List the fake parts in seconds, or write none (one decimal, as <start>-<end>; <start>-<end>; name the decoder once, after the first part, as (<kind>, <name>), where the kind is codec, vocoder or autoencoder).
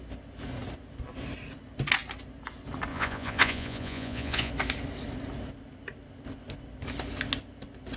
2.9-4.5 (vocoder, Vocos)